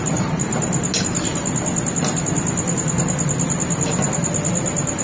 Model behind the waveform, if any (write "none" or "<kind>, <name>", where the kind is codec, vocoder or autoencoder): none